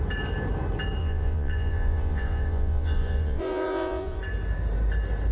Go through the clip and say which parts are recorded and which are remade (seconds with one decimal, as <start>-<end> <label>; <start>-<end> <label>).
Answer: 0.0-1.0 recorded; 1.0-4.2 remade; 4.2-5.3 recorded